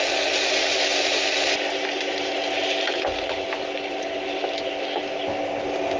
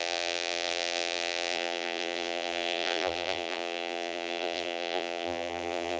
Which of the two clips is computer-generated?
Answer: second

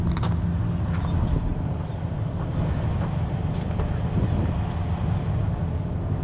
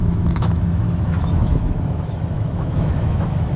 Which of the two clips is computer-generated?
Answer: second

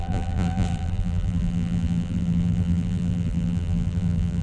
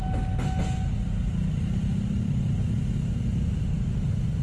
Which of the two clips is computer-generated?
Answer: first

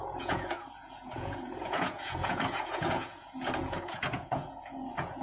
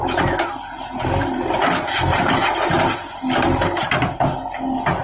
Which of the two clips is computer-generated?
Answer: first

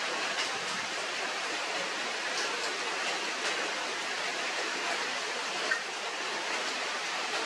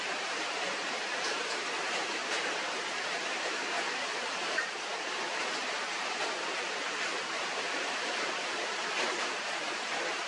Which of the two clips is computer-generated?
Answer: second